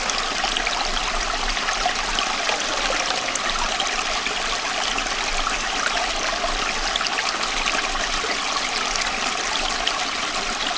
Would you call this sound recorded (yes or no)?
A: yes